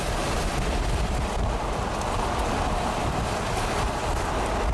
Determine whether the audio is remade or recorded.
recorded